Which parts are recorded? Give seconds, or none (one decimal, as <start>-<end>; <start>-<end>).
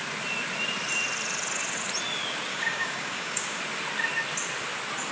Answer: 0.0-2.5; 3.6-5.1